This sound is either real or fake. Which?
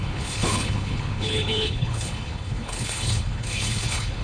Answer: fake